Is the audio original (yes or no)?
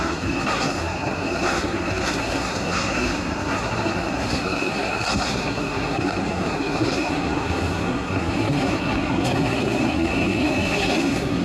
no